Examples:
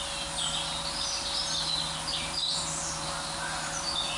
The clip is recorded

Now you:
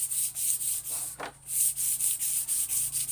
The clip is recorded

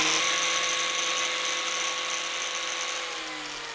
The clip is recorded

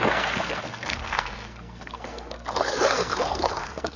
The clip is remade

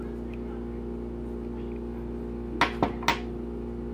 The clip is recorded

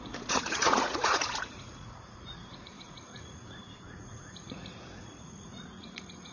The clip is remade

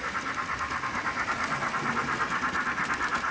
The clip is recorded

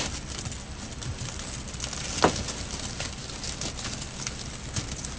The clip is recorded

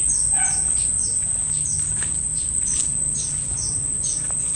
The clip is recorded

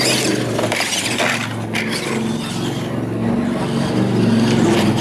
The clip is recorded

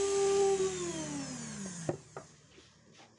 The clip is recorded